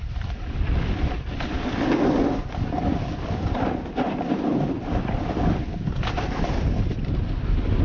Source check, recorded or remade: recorded